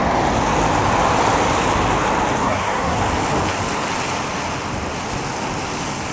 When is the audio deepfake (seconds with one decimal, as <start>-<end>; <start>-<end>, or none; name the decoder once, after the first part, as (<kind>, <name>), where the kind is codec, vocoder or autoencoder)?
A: 2.4-3.0 (codec, SNAC)